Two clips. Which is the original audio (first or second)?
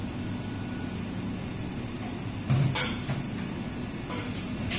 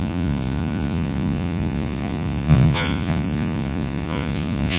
first